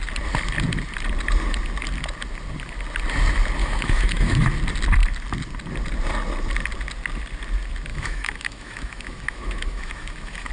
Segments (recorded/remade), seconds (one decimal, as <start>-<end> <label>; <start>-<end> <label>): 0.0-3.6 recorded; 3.6-4.5 remade; 4.5-7.9 recorded; 7.9-10.5 remade